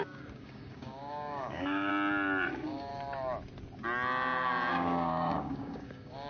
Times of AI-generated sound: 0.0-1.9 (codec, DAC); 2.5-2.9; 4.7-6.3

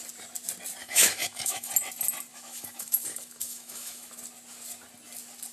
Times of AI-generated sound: 0.8-1.7 (autoencoder, DAC-VAE); 2.3-4.1

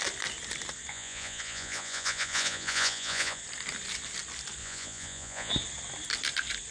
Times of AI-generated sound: 0.9-3.4 (vocoder, Vocos); 4.6-5.5